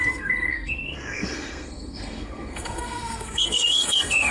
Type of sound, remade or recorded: remade